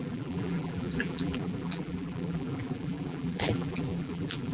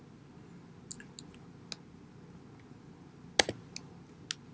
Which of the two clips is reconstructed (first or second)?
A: first